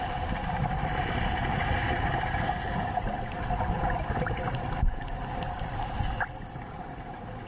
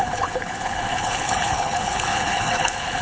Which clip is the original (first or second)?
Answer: first